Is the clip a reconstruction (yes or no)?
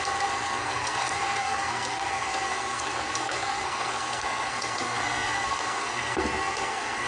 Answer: yes